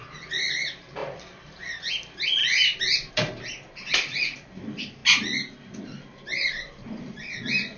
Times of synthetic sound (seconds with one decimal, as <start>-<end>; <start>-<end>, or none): 0.0-2.4; 3.1-5.0; 5.8-7.8